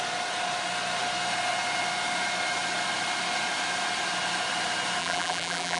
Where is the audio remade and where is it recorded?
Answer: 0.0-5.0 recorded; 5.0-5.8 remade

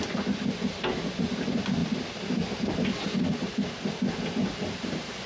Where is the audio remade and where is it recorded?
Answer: 0.0-5.3 recorded

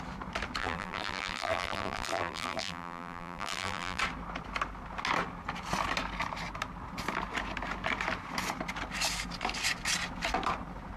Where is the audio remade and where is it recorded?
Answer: 0.0-0.6 recorded; 0.6-4.0 remade; 4.0-11.0 recorded

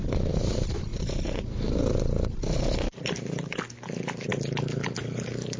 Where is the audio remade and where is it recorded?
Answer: 0.0-0.9 remade; 0.9-4.3 recorded; 4.3-5.6 remade